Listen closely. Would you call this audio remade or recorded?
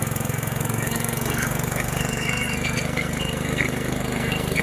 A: remade